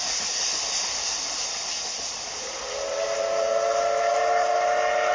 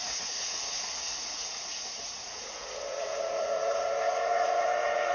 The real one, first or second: first